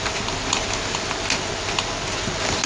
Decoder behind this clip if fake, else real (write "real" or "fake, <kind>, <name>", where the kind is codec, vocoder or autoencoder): real